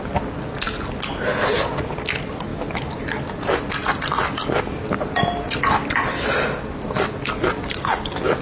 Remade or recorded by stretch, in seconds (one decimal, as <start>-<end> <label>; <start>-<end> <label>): 0.0-8.4 recorded